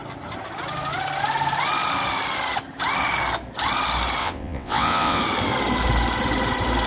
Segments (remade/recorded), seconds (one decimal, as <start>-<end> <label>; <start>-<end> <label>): 0.0-4.2 recorded; 4.2-5.2 remade; 5.2-6.9 recorded